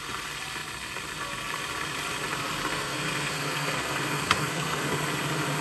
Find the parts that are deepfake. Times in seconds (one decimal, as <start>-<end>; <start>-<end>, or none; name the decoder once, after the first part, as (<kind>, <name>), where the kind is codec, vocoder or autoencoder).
2.7-5.0 (codec, SNAC)